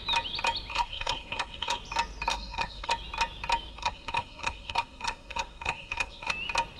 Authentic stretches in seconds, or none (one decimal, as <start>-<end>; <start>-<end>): 0.0-0.7; 1.8-2.3; 2.9-3.7; 6.3-6.8